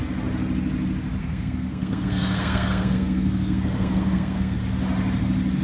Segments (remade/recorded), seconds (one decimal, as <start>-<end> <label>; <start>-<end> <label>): 0.0-1.2 recorded; 1.2-4.6 remade; 4.6-5.6 recorded